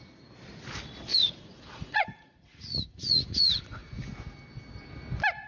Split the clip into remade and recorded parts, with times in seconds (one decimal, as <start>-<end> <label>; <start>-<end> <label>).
0.0-1.1 recorded; 1.1-4.0 remade; 4.0-5.5 recorded